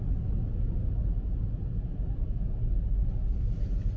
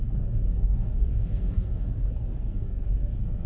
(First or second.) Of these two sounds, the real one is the first